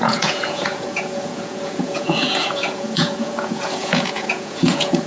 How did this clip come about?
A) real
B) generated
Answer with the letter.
B